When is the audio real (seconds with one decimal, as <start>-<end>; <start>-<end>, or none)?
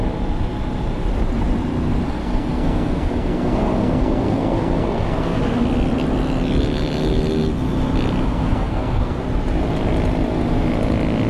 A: 0.0-2.2; 5.4-8.3; 9.2-11.3